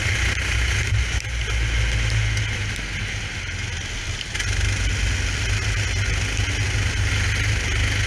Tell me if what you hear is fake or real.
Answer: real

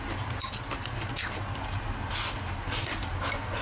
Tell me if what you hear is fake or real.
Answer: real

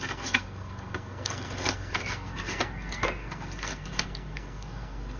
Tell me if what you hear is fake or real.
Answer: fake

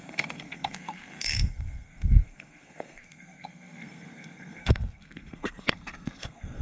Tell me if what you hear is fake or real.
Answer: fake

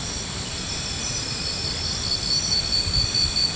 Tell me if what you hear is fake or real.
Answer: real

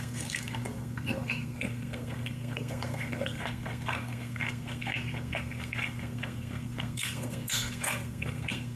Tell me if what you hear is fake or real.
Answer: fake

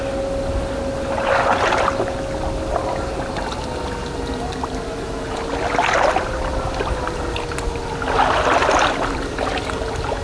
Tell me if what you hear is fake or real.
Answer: real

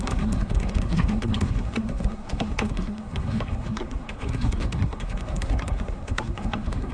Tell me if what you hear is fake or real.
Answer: fake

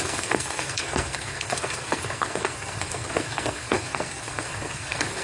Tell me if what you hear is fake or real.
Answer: fake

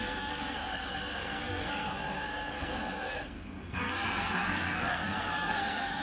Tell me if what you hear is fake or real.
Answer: fake